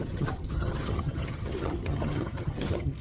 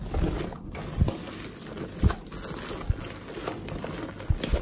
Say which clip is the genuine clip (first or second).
second